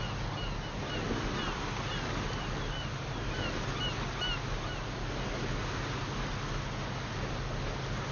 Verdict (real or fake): real